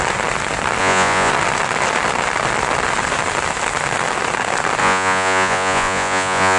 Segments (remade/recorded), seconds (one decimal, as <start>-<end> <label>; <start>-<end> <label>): 0.0-0.8 recorded; 0.8-1.3 remade; 1.3-4.8 recorded; 4.8-6.6 remade